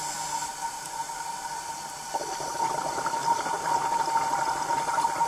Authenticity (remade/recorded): recorded